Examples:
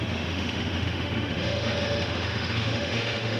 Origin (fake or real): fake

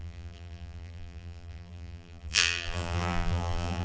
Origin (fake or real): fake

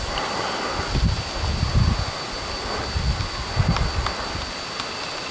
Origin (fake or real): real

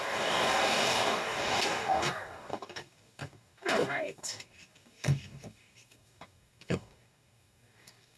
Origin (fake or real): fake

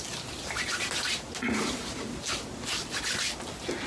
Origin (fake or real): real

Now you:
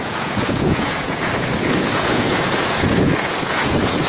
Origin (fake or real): fake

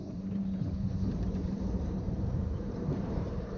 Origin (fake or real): fake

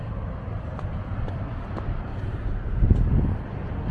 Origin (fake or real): real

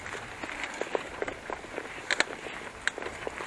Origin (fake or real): real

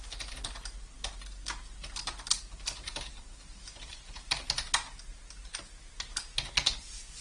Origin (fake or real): real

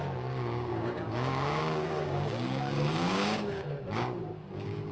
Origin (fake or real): fake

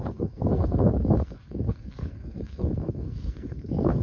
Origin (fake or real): fake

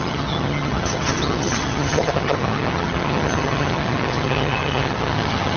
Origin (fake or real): fake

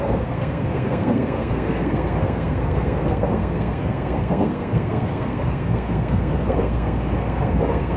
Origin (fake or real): fake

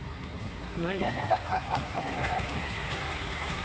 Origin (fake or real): fake